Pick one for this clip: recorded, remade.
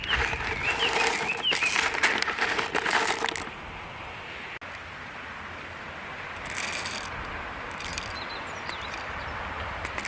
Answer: recorded